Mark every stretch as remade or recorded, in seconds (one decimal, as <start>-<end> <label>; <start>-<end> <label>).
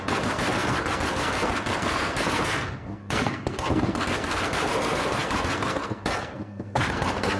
0.0-7.4 remade